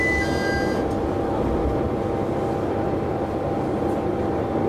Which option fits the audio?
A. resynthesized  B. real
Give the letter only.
B